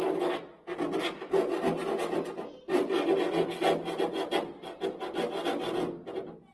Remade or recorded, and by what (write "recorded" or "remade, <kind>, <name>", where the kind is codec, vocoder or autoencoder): recorded